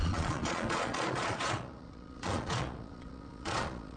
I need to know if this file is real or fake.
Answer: fake